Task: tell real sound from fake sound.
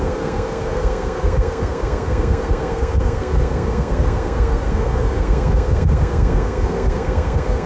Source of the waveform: fake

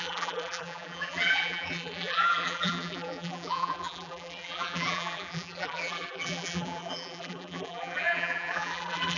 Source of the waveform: fake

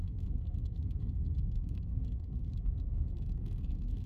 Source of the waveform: fake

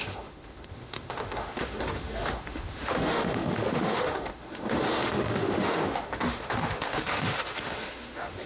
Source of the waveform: fake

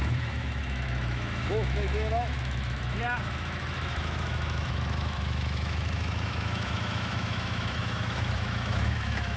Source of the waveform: fake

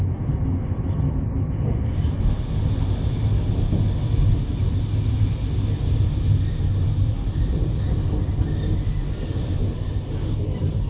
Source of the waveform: real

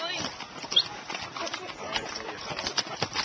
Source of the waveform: real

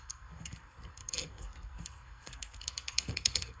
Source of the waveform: fake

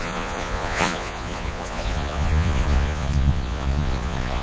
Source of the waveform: fake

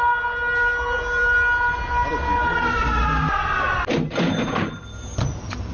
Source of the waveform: real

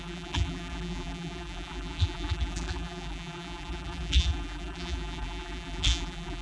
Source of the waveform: fake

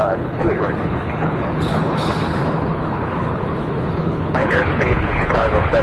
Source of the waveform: fake